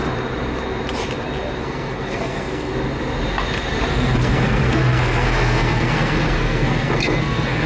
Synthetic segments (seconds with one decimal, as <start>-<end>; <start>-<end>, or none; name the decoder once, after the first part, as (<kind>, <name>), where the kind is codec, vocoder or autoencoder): 1.6-2.7 (codec, SNAC); 3.9-7.7